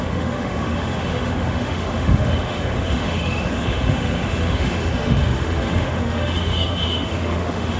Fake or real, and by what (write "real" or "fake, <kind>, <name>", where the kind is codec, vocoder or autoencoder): fake, autoencoder, DAC-VAE